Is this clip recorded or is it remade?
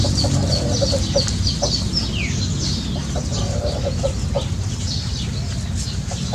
recorded